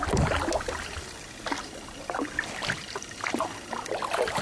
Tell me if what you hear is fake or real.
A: real